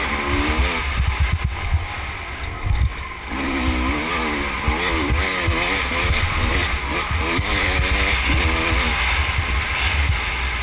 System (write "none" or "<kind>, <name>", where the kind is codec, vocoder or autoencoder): none